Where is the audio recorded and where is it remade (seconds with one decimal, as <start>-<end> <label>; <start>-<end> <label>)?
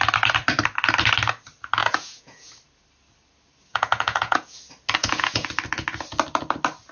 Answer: 0.0-1.8 recorded; 1.8-2.5 remade; 2.5-3.7 recorded; 3.7-4.6 remade; 4.6-5.0 recorded; 5.0-5.5 remade; 5.5-6.9 recorded